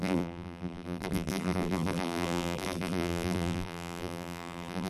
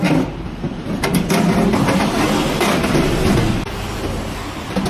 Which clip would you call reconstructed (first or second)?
first